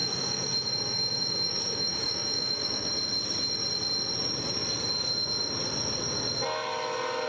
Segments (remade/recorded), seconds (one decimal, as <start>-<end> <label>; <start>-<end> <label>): 0.0-2.9 remade; 2.9-7.3 recorded